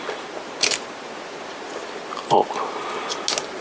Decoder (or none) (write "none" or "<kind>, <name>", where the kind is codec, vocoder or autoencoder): none